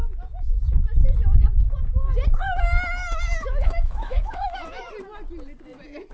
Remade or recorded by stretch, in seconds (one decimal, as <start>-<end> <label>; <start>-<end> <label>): 0.0-3.0 recorded; 3.0-4.9 remade; 4.9-6.1 recorded